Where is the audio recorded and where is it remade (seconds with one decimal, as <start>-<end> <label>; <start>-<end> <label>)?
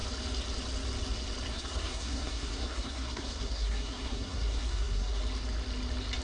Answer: 0.0-1.5 recorded; 1.5-5.2 remade; 5.2-6.2 recorded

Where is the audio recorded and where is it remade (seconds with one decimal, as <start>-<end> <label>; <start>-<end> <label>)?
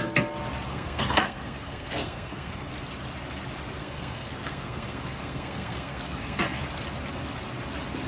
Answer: 0.0-0.7 recorded; 0.7-2.7 remade; 2.7-3.8 recorded; 3.8-6.6 remade; 6.6-8.1 recorded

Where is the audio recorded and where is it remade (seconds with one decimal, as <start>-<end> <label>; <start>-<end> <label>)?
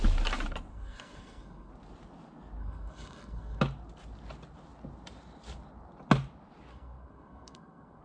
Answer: 0.0-0.7 recorded; 0.7-1.7 remade; 1.7-2.6 recorded; 2.6-3.6 remade; 3.6-6.7 recorded; 6.7-8.0 remade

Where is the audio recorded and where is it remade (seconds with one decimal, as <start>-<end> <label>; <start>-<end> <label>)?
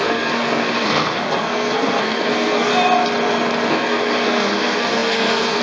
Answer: 0.0-2.7 remade; 2.7-3.7 recorded; 3.7-5.6 remade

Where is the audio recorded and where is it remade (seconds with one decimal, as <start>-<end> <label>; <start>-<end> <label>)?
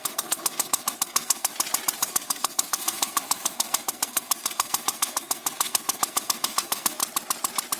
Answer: 0.0-1.5 remade; 1.5-2.1 recorded; 2.1-7.0 remade; 7.0-7.8 recorded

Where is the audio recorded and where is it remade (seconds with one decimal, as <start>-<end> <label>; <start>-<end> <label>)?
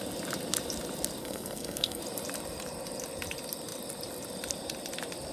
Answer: 0.0-1.2 recorded; 1.2-2.0 remade; 2.0-5.3 recorded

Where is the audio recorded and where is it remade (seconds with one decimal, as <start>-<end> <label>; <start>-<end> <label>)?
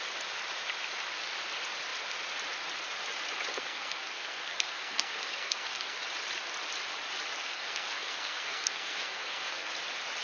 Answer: 0.0-3.5 recorded; 3.5-6.0 remade; 6.0-7.4 recorded; 7.4-9.7 remade; 9.7-10.2 recorded